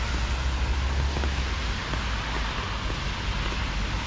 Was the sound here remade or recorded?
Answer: recorded